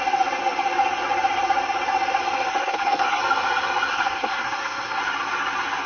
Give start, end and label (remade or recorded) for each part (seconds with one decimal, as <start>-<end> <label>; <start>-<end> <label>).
0.0-2.5 recorded; 2.5-3.2 remade; 3.2-3.9 recorded; 3.9-5.0 remade; 5.0-5.9 recorded